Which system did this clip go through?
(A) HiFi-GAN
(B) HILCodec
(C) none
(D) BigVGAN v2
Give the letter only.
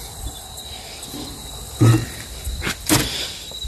C